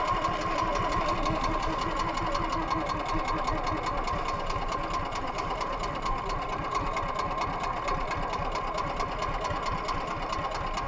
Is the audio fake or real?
real